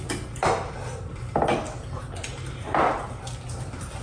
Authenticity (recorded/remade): recorded